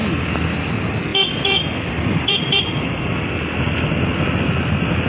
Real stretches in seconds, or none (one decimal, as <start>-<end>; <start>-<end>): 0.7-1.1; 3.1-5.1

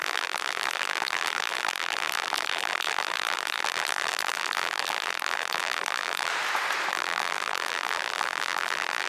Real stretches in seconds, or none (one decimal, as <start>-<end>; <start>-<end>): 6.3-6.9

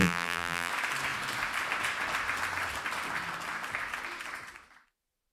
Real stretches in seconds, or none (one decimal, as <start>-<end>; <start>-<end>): 0.7-5.3

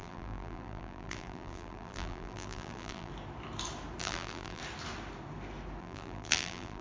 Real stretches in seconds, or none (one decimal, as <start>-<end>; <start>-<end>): 3.1-4.0; 4.6-5.8

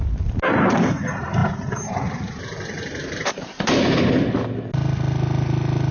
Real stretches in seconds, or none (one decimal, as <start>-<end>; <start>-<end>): 0.0-1.4; 4.0-5.9

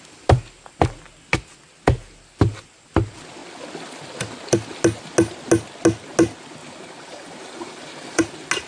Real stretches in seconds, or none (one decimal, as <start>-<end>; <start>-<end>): 0.0-6.6; 8.2-8.7

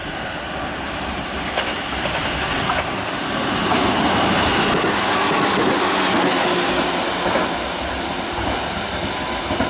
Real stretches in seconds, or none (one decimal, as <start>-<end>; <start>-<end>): 0.0-0.7; 2.2-3.2; 4.5-9.7

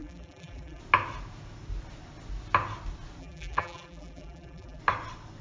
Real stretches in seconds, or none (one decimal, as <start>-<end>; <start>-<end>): 0.8-3.2; 4.8-5.4